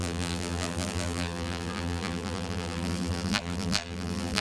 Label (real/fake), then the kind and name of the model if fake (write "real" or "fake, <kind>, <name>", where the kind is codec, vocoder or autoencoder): fake, vocoder, BigVGAN v2